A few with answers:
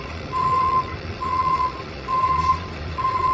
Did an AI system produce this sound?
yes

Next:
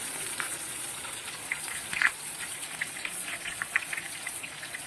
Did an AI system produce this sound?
yes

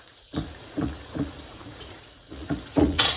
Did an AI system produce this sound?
yes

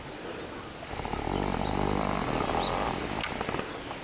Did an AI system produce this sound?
no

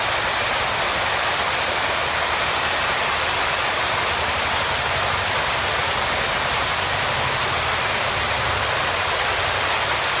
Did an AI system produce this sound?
no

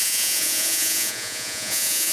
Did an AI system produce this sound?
yes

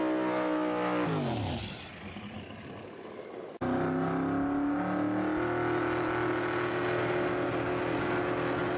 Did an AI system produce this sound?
no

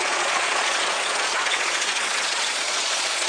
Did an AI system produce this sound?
yes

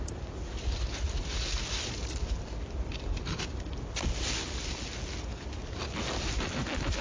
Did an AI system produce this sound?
no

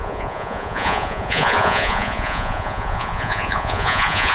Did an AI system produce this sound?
yes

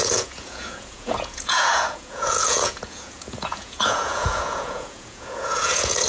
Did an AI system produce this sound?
yes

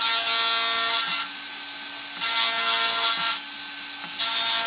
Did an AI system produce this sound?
no